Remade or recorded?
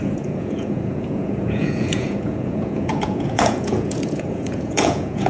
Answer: remade